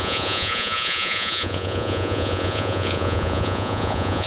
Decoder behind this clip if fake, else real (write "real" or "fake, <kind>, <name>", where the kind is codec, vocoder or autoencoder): fake, vocoder, Vocos